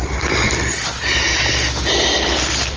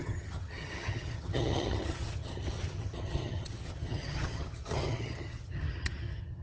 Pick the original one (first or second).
first